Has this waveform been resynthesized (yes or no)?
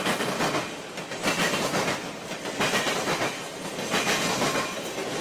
no